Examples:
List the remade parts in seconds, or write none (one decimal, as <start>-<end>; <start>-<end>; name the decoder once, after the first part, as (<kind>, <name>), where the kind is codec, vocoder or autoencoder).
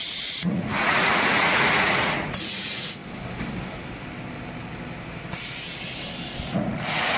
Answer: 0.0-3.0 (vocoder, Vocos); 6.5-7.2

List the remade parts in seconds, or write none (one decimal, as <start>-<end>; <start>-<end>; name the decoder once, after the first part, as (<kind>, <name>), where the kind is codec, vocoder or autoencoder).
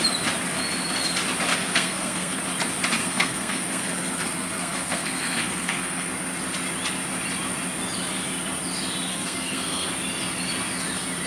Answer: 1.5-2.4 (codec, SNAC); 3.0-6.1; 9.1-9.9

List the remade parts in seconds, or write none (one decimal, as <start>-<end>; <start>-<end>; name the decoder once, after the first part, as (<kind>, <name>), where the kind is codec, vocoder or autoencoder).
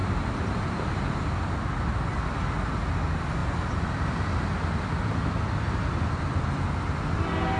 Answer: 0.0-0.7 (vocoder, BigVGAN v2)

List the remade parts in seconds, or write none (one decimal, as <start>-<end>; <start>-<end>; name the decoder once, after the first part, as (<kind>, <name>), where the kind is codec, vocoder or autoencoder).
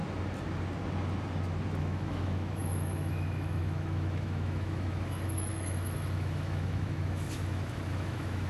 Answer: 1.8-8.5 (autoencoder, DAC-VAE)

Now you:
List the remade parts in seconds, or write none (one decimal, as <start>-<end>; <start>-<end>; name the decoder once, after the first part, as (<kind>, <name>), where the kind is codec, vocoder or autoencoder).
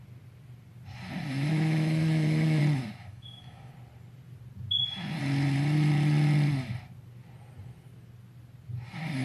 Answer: 1.5-2.6 (autoencoder, DAC-VAE); 3.0-3.7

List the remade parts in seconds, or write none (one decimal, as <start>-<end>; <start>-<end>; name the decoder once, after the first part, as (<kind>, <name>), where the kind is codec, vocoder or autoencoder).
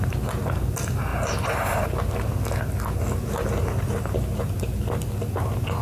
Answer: none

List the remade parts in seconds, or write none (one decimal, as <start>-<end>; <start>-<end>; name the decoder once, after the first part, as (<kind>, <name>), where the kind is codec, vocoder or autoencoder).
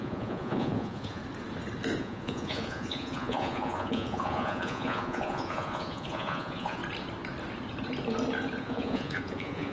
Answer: 0.0-1.2 (vocoder, Vocos); 2.0-6.8; 8.6-9.7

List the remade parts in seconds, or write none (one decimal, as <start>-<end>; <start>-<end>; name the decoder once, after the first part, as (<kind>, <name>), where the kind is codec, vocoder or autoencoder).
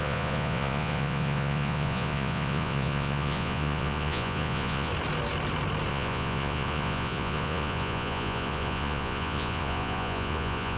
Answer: 0.0-4.9 (vocoder, Vocos); 5.9-10.8